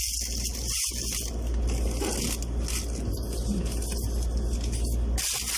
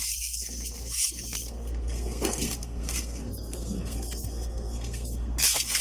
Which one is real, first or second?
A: first